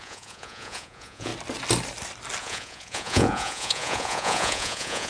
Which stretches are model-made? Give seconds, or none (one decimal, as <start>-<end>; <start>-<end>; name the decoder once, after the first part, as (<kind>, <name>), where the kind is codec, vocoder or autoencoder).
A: 0.0-1.3 (vocoder, Vocos); 2.4-5.1